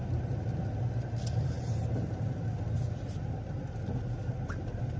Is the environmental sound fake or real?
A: real